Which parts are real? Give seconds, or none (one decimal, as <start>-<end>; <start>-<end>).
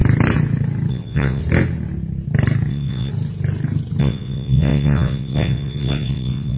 0.0-0.9; 1.4-2.7; 3.1-4.0